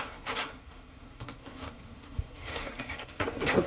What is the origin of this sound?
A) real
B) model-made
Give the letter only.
B